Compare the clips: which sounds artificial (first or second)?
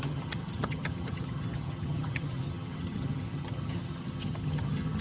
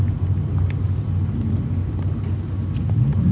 first